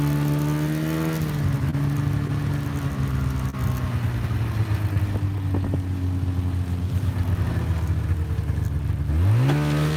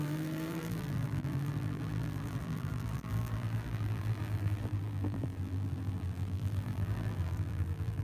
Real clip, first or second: first